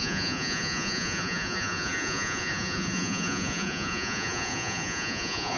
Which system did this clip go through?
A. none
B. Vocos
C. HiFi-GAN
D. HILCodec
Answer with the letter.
B